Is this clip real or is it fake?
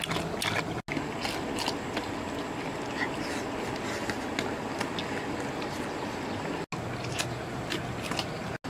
real